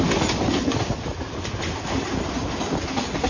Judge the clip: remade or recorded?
recorded